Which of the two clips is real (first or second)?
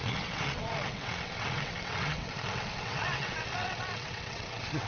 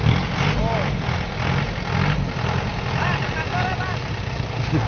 second